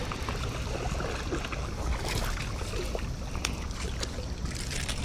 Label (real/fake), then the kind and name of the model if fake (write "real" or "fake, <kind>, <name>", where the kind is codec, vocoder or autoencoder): real